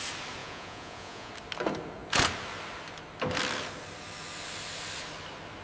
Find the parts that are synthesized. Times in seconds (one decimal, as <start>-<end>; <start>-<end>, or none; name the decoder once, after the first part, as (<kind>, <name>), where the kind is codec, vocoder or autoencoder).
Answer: 0.4-1.3 (vocoder, Vocos)